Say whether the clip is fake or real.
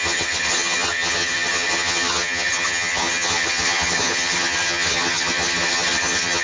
fake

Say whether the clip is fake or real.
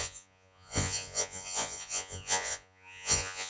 fake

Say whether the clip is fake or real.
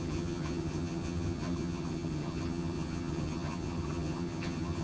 fake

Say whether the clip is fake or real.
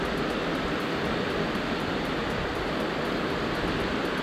real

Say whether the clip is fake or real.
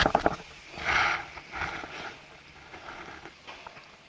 real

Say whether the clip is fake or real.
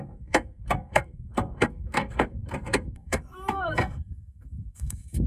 fake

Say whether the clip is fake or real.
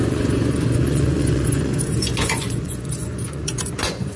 fake